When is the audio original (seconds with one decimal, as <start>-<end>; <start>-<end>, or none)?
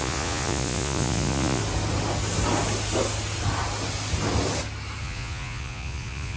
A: 1.6-5.0